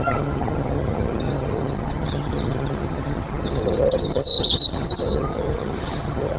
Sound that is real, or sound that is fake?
fake